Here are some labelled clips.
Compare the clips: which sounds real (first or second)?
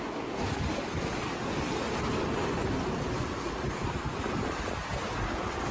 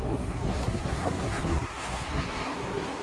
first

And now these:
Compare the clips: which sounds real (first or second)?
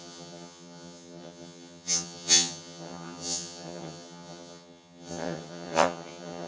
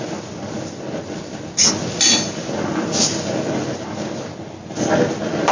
second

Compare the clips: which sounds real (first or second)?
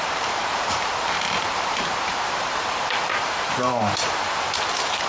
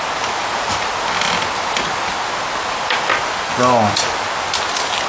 second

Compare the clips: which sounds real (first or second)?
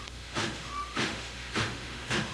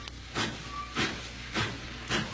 second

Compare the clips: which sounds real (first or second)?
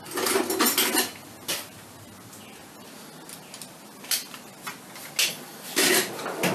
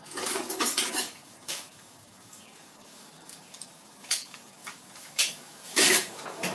first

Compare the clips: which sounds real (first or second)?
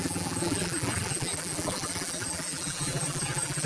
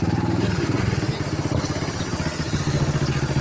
second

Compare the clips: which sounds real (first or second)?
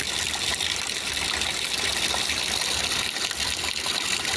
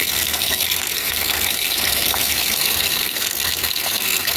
first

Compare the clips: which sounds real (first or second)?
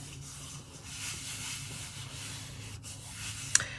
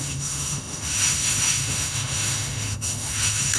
first